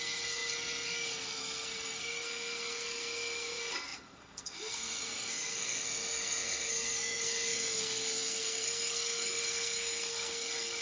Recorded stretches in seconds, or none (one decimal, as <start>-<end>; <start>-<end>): none